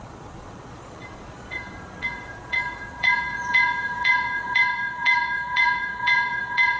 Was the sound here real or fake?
fake